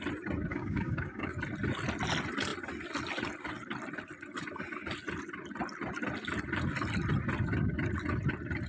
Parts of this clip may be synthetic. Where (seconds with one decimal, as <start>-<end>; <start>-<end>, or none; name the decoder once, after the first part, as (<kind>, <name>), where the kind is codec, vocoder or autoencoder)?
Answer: 0.5-1.4 (codec, DAC)